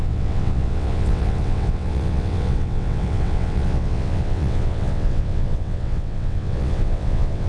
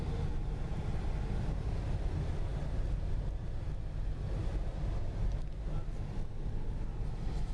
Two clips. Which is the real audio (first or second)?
second